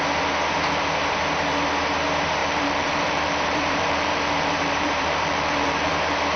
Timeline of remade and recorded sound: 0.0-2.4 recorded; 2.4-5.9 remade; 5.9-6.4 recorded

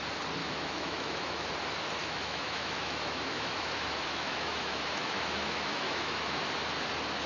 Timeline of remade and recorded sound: 0.0-0.4 recorded; 0.4-1.5 remade; 1.5-2.0 recorded; 2.0-6.4 remade; 6.4-7.3 recorded

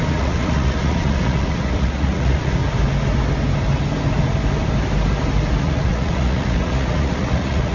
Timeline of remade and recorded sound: 0.0-2.6 remade; 2.6-5.6 recorded; 5.6-7.7 remade